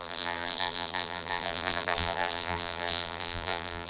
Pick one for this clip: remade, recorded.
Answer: remade